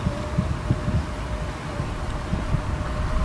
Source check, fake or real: real